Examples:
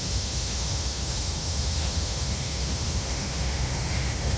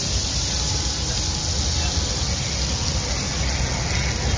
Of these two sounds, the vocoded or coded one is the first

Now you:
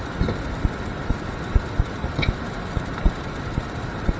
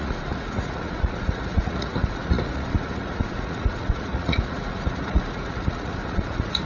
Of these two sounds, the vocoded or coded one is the second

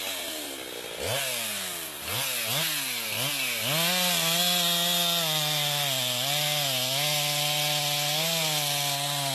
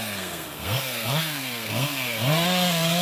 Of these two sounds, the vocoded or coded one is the second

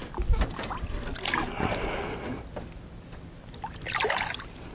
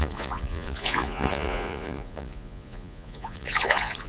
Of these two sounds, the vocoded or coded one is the second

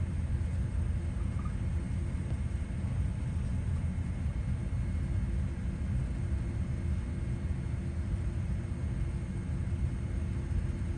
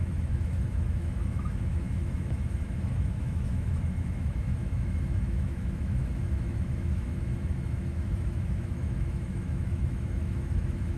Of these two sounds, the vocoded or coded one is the second